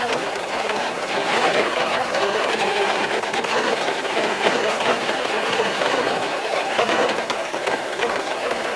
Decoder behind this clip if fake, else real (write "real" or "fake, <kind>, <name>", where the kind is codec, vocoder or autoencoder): fake, codec, SNAC